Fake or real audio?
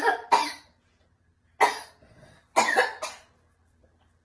real